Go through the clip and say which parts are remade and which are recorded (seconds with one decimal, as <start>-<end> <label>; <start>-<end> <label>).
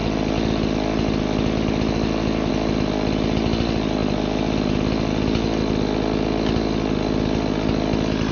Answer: 0.0-8.3 recorded